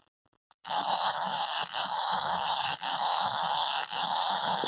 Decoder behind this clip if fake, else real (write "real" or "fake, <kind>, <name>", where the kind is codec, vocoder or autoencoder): fake, autoencoder, DAC-VAE